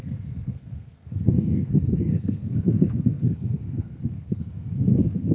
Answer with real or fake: fake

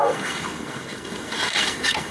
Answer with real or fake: fake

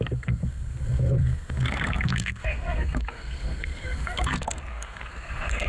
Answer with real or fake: fake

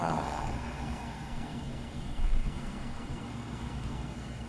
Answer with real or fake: fake